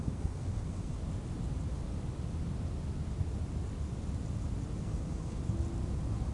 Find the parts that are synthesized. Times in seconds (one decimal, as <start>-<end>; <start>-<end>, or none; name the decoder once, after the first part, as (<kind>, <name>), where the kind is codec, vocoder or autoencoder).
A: 0.0-1.0 (codec, SNAC); 4.8-5.4